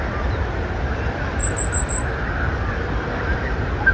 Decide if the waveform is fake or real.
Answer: real